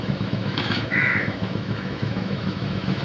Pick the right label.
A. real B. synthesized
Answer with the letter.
B